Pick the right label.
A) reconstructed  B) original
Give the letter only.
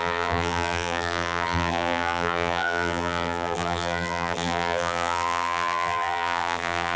A